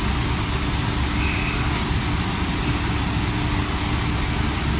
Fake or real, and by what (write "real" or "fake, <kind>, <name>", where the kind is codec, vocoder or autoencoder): real